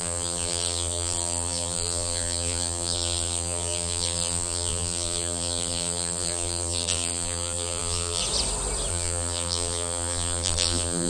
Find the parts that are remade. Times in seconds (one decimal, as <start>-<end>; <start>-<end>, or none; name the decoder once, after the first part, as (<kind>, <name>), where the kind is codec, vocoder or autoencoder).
0.0-8.2 (vocoder, BigVGAN v2); 8.9-11.1